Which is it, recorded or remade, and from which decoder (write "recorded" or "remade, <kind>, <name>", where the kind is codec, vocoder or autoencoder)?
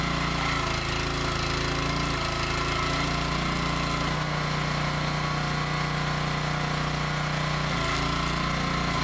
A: recorded